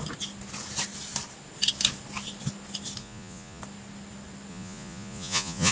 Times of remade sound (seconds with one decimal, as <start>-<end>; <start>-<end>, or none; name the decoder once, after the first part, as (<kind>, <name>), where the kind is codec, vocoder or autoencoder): 3.0-3.6 (vocoder, Vocos); 4.5-5.7

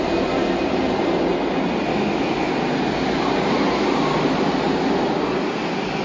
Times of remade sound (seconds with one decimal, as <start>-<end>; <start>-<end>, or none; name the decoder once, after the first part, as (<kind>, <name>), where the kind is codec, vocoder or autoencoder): 1.9-2.5 (autoencoder, DAC-VAE)

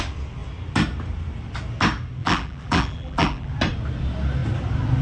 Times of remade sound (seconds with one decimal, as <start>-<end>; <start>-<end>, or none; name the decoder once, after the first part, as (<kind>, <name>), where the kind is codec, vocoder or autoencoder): 2.2-3.5 (vocoder, BigVGAN v2)

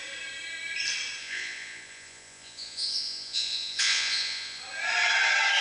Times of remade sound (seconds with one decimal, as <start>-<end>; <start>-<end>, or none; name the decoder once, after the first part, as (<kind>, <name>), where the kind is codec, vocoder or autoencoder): 1.2-4.6 (vocoder, Vocos)

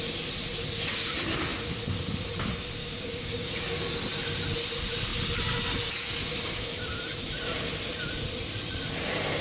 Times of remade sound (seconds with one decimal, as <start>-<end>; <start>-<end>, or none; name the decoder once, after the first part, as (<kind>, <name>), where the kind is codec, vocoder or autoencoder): 2.8-3.8 (codec, DAC)

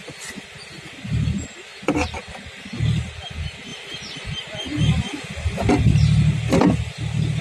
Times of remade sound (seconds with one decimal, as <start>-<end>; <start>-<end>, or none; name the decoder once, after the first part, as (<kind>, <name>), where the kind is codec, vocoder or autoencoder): none

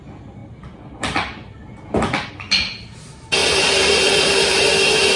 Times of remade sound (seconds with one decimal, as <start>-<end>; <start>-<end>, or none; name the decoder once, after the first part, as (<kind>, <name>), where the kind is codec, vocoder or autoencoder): 3.4-4.7 (vocoder, BigVGAN v2)

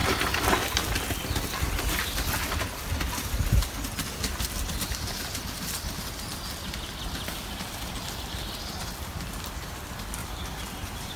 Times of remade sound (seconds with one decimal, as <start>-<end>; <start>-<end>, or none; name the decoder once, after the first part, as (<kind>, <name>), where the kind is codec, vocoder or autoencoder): 7.2-8.7 (vocoder, BigVGAN v2); 10.2-11.2